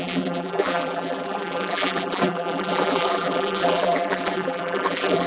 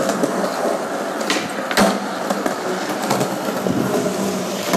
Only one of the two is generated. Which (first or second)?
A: first